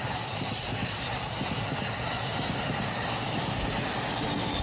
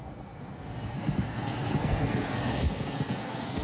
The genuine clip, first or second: first